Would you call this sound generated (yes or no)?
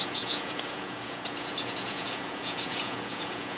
yes